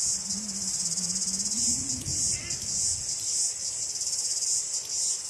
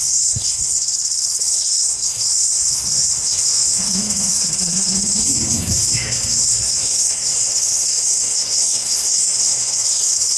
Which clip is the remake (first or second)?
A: second